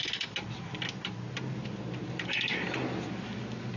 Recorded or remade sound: recorded